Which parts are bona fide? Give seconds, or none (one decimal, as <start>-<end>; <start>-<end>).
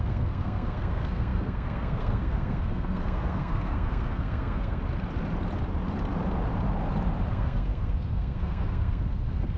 4.8-7.3